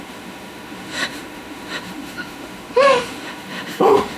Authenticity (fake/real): fake